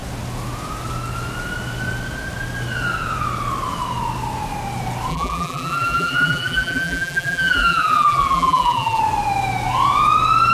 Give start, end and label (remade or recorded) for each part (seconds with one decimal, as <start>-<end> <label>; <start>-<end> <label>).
0.0-5.1 recorded; 5.1-9.0 remade; 9.0-10.5 recorded